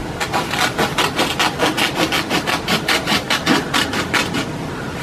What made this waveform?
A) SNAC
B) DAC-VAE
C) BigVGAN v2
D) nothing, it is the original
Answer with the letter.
D